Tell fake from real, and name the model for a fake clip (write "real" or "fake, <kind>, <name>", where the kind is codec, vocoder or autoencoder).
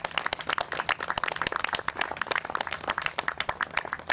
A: real